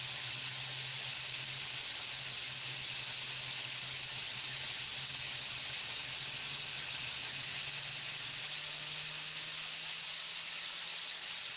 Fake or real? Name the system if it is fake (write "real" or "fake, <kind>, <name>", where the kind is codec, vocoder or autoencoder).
real